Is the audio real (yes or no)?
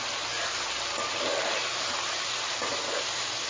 yes